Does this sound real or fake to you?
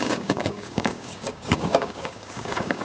fake